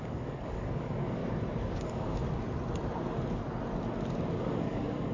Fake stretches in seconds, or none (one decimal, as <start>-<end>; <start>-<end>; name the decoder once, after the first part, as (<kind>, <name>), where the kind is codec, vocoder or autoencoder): 0.0-1.2 (codec, DAC); 1.8-2.2; 4.4-5.1